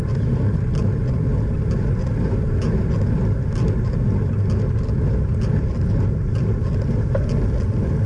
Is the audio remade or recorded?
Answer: recorded